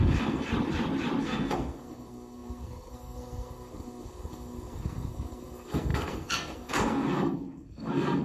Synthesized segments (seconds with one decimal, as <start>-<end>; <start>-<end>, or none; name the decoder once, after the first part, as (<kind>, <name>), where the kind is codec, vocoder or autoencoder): 0.0-0.5 (codec, SNAC); 1.2-8.2

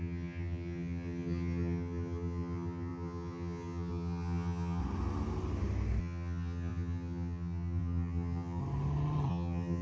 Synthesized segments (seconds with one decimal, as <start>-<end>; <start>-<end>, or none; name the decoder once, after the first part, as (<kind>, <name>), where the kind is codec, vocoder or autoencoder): 0.0-4.8 (vocoder, HiFi-GAN); 6.0-8.6; 9.3-9.8

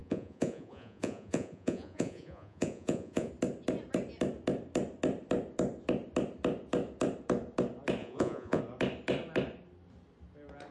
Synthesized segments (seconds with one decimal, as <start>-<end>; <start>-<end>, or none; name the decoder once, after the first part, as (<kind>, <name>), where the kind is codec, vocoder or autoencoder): 0.0-3.3 (vocoder, Vocos); 8.0-8.6

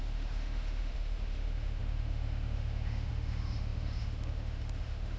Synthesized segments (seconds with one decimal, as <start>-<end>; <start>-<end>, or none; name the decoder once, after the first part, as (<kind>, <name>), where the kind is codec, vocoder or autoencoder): 0.0-5.2 (autoencoder, DAC-VAE)

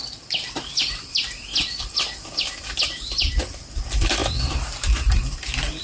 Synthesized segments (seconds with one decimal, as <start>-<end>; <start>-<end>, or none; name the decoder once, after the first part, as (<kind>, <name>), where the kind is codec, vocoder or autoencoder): none